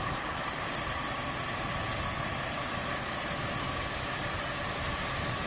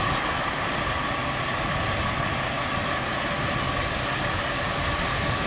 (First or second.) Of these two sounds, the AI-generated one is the first